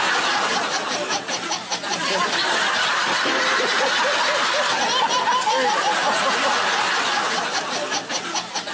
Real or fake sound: real